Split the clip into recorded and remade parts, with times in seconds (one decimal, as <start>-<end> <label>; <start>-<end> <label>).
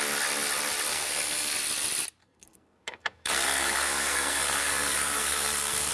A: 0.0-0.9 recorded; 0.9-1.5 remade; 1.5-2.2 recorded; 2.2-5.9 remade